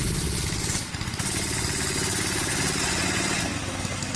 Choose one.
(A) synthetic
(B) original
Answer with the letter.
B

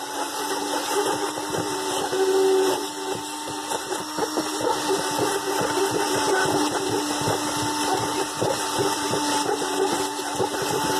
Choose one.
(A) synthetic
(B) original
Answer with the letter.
B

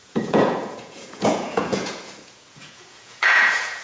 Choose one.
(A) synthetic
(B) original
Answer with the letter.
A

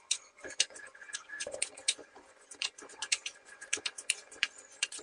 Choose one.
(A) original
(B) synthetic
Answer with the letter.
B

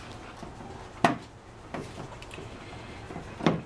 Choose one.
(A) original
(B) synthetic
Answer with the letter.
A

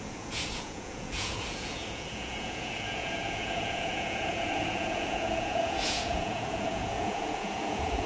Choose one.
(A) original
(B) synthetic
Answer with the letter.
B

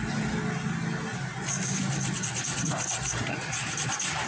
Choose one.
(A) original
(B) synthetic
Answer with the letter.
A